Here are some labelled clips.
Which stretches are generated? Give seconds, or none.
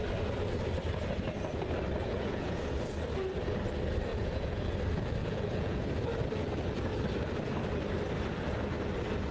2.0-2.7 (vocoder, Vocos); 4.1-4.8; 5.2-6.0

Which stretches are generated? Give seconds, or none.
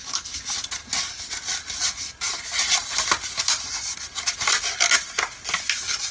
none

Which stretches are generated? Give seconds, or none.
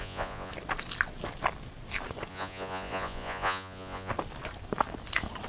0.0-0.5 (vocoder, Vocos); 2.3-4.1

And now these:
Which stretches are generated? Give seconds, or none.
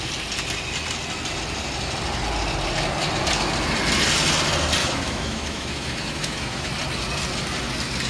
4.8-6.7 (autoencoder, DAC-VAE)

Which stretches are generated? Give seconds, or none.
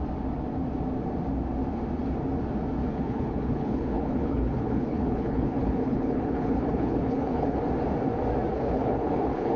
2.8-7.6 (codec, HILCodec); 8.5-9.6